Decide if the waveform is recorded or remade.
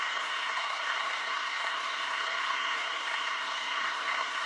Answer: remade